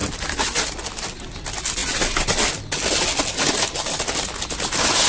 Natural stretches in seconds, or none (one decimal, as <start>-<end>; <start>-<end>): 0.0-5.1